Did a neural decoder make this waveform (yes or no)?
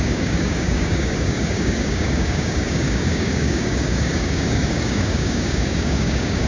yes